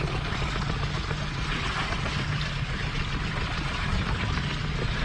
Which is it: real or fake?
real